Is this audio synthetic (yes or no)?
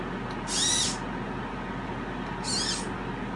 no